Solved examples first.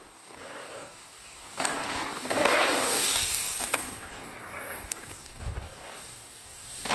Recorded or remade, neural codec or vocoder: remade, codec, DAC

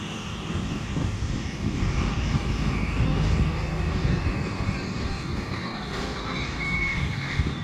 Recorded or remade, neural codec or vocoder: remade, codec, DAC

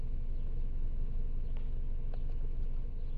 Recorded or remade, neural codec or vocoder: recorded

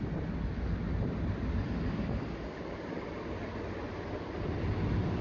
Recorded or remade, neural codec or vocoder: recorded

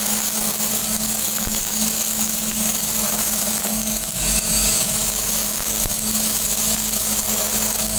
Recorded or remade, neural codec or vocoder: remade, codec, DAC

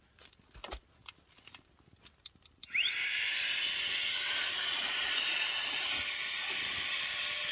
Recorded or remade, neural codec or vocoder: recorded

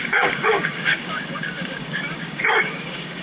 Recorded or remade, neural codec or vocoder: remade, codec, DAC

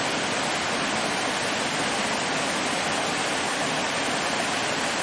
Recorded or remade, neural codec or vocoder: recorded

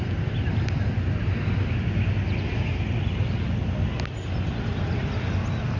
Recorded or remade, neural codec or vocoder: recorded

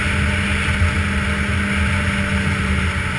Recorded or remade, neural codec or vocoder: recorded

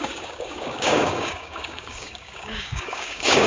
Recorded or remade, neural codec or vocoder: remade, codec, DAC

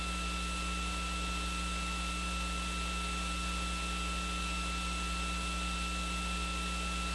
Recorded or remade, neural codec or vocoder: recorded